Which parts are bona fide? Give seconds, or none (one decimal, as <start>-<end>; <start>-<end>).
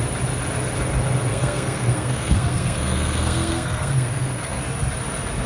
0.0-1.3; 4.6-5.5